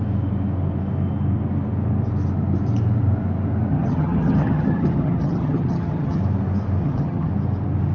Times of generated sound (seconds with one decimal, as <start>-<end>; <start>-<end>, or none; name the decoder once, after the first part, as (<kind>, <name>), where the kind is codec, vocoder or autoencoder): 3.7-6.2 (vocoder, HiFi-GAN); 6.8-7.3